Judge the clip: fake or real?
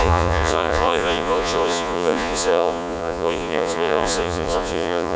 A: fake